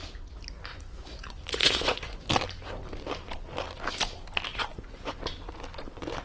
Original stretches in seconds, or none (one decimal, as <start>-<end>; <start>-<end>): 0.0-0.7; 2.3-4.5; 5.2-6.2